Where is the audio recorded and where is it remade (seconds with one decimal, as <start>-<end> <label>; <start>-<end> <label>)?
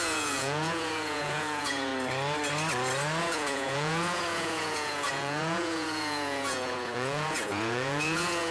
0.0-1.9 remade; 1.9-3.2 recorded; 3.2-8.5 remade